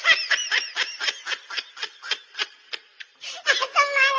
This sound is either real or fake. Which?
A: real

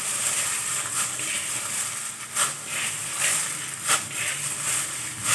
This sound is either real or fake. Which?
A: real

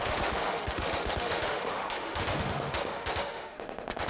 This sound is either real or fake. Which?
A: fake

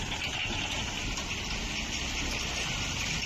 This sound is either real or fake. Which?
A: real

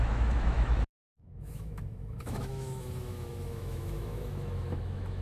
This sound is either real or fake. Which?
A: fake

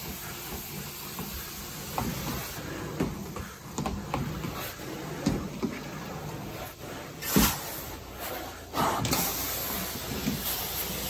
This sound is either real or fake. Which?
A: real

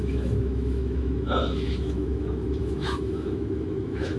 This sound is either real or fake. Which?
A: fake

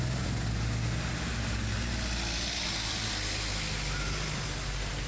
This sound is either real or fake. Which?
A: real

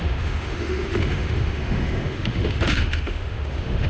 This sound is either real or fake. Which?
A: fake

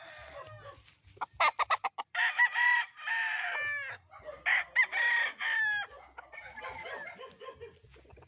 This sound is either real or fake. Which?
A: real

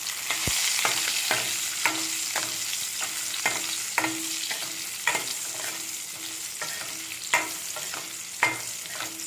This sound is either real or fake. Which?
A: real